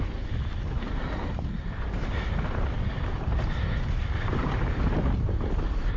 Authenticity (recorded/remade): recorded